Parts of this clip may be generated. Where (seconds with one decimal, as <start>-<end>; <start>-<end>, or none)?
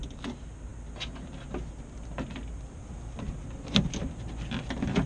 none